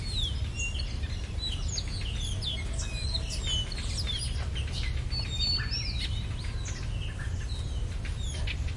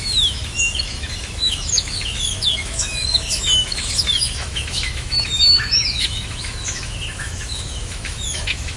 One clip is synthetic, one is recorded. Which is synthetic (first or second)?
second